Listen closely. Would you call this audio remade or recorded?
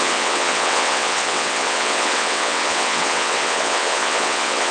remade